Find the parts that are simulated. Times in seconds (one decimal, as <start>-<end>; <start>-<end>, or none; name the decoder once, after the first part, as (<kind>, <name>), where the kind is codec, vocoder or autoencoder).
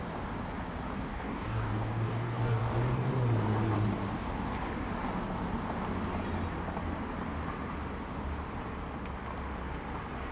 1.1-3.1 (codec, DAC)